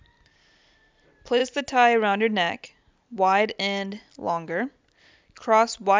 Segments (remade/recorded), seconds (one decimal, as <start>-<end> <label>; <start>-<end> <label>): 0.0-6.0 recorded